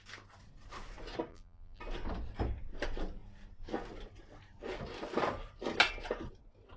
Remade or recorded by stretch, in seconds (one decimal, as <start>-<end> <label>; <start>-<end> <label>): 0.0-1.3 recorded; 1.3-1.8 remade; 1.8-6.8 recorded